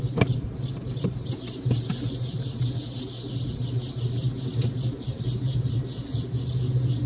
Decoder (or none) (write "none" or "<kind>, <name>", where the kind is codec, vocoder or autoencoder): none